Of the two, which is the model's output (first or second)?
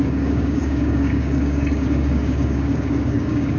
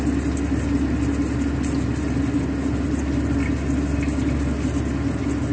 first